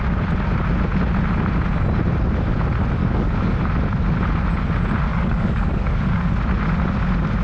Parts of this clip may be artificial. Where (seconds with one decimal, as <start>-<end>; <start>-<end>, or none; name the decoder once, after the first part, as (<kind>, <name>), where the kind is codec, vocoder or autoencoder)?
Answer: 3.0-3.6 (codec, DAC); 5.1-6.3